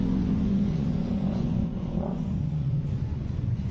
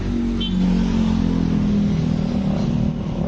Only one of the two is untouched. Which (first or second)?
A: second